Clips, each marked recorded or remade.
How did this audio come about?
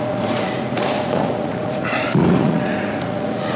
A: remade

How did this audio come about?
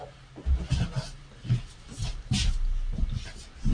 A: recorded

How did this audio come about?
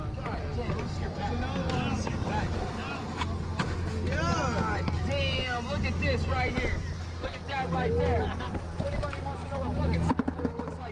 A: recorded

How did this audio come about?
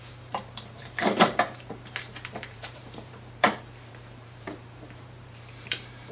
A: remade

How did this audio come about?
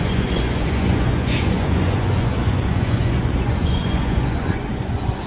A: remade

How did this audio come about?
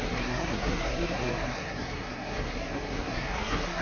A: remade